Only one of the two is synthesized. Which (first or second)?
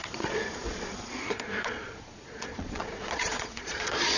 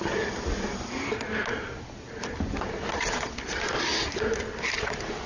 first